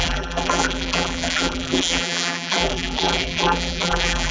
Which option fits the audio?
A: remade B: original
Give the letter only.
A